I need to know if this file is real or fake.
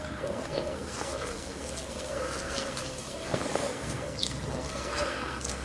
fake